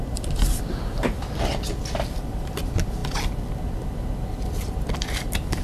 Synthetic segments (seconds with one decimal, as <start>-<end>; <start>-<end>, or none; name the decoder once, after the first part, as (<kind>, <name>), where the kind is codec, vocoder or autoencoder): 0.0-1.5 (vocoder, BigVGAN v2); 2.1-3.0; 4.9-5.6